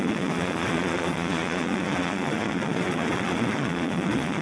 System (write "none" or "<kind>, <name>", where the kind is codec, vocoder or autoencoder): vocoder, Vocos